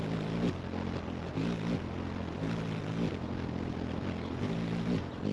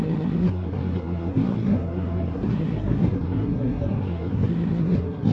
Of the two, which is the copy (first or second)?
second